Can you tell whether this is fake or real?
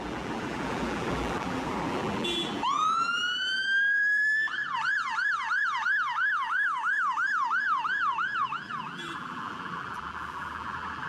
fake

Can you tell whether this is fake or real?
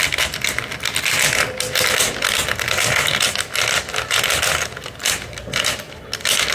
real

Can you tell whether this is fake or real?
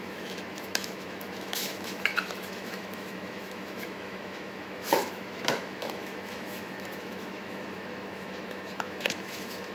fake